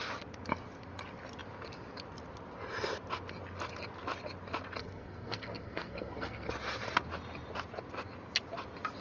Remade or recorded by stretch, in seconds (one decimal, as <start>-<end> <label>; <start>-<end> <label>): 0.0-4.8 recorded; 4.8-6.5 remade; 6.5-9.0 recorded